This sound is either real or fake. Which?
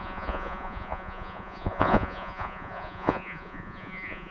fake